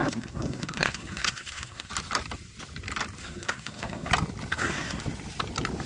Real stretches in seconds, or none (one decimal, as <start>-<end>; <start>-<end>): 1.9-3.2; 4.1-4.5; 5.0-5.9